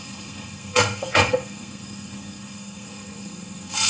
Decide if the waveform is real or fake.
fake